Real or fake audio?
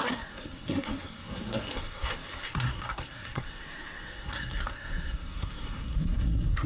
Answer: fake